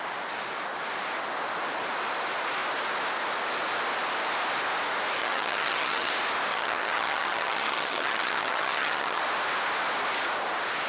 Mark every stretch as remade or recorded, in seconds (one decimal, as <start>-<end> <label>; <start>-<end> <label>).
0.0-5.2 recorded; 5.2-6.1 remade; 6.1-6.5 recorded; 6.5-9.2 remade; 9.2-10.9 recorded